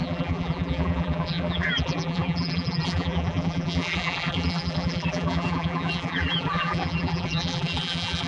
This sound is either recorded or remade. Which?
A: remade